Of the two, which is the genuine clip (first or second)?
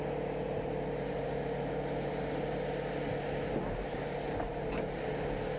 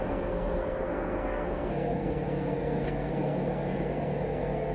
first